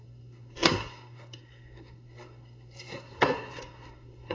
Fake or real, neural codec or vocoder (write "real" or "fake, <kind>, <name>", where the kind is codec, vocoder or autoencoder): fake, codec, SNAC